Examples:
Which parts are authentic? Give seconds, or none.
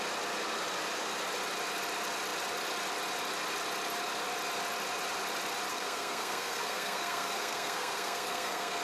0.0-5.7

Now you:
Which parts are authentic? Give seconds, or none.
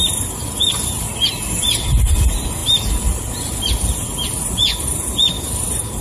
0.0-6.0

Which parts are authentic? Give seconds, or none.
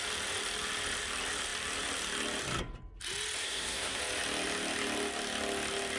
0.0-3.4; 4.0-6.0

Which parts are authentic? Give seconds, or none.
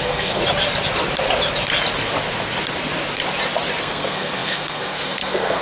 0.4-3.8